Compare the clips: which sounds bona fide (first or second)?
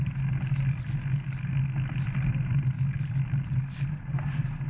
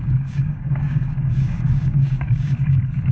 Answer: first